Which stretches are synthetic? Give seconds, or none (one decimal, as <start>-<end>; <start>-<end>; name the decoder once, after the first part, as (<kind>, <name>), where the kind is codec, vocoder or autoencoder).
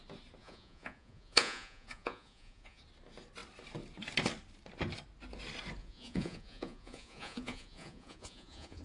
0.4-2.8 (vocoder, Vocos); 5.8-8.8